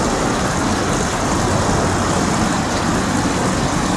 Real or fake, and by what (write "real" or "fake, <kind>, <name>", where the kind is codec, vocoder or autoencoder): real